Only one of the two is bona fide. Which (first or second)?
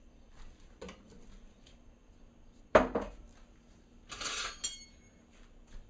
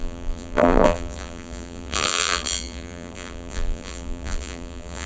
first